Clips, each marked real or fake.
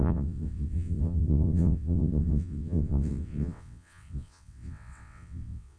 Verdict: fake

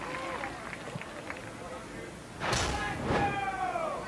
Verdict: real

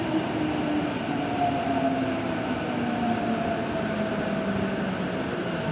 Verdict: real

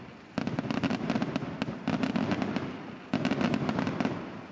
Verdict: real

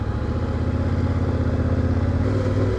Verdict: real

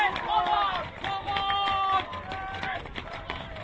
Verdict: real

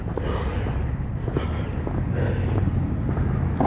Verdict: real